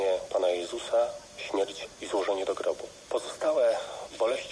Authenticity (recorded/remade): recorded